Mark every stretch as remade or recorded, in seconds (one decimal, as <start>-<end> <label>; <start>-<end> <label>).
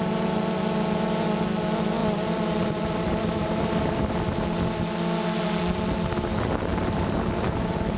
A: 0.0-2.0 recorded; 2.0-4.1 remade; 4.1-6.7 recorded; 6.7-8.0 remade